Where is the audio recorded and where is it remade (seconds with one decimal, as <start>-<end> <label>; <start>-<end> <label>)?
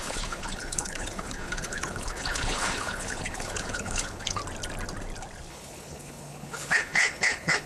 0.0-4.4 remade; 4.4-5.5 recorded; 5.5-7.7 remade